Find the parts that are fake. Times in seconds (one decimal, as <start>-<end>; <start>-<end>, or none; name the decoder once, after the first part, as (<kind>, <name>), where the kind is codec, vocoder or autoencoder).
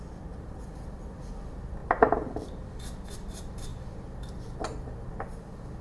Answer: none